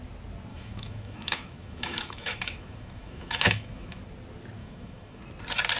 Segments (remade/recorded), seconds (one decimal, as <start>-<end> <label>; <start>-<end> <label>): 0.0-0.5 recorded; 0.5-4.0 remade; 4.0-4.6 recorded; 4.6-5.2 remade; 5.2-5.8 recorded